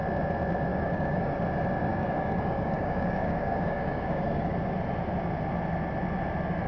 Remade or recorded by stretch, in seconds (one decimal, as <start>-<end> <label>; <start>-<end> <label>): 0.0-0.7 recorded; 0.7-1.4 remade; 1.4-1.9 recorded; 1.9-4.5 remade; 4.5-6.7 recorded